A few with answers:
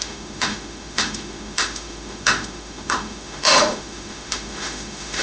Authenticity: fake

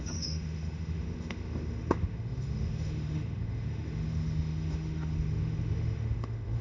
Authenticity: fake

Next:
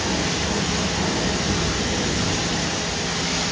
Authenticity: real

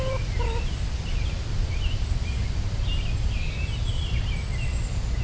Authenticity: real